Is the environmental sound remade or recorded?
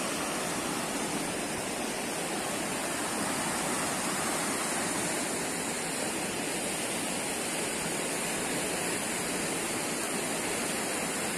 recorded